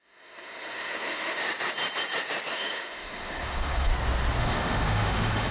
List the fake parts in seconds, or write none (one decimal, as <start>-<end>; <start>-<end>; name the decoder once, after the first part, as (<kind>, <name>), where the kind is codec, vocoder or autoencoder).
0.0-1.4 (autoencoder, DAC-VAE); 2.5-3.9; 4.4-5.5